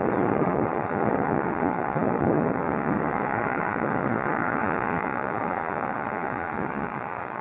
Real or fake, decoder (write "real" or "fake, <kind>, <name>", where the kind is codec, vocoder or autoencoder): fake, vocoder, Vocos